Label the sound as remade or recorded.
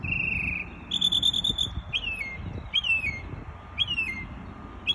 recorded